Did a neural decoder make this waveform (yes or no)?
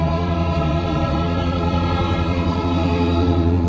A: yes